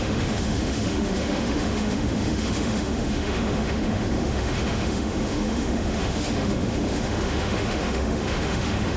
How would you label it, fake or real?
fake